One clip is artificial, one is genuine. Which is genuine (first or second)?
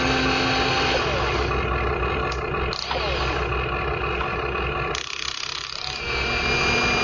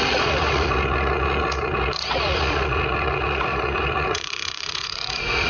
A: first